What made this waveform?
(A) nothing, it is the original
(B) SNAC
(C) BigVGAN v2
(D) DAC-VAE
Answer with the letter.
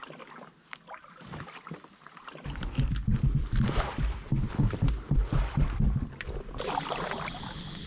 C